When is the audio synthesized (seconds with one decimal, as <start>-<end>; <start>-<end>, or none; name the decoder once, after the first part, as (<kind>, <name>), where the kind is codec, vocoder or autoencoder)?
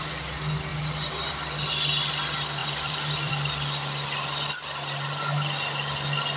0.7-1.7 (vocoder, BigVGAN v2); 2.6-3.3